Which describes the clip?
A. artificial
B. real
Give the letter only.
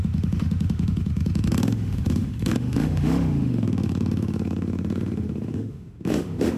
A